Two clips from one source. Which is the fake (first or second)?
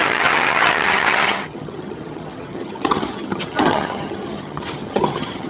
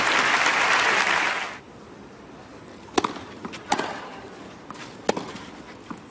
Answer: first